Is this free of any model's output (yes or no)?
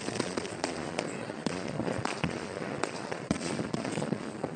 no